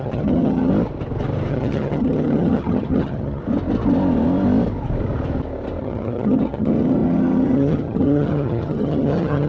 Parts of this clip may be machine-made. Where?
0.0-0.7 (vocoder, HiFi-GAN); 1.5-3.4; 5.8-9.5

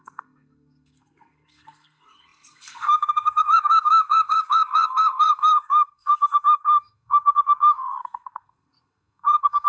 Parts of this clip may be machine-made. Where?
0.0-9.7 (codec, SNAC)

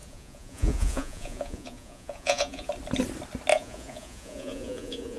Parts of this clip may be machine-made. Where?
0.0-2.7 (vocoder, Vocos); 3.5-5.2

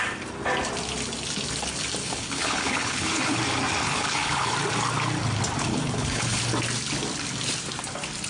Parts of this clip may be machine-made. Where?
2.0-3.4 (codec, HILCodec); 3.8-4.5; 5.7-6.4